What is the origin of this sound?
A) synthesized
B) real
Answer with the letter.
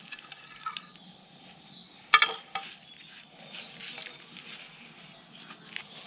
B